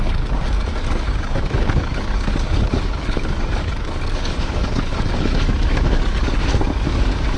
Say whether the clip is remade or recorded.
remade